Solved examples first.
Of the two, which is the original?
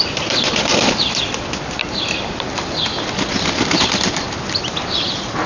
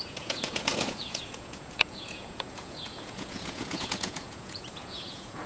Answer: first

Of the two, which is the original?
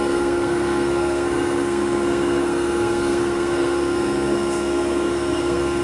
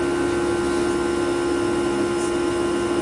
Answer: second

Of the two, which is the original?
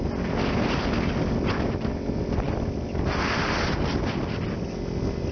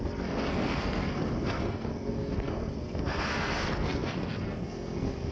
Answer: first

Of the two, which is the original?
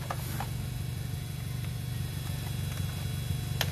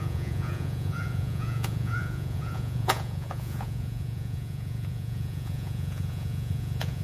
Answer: first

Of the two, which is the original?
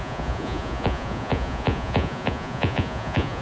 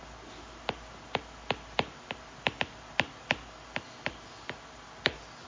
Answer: second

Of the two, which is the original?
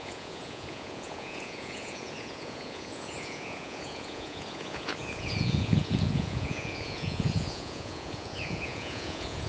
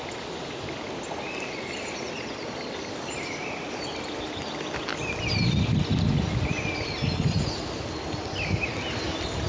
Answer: second